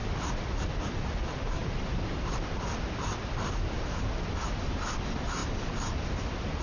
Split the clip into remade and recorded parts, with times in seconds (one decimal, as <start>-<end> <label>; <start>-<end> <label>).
0.0-6.6 recorded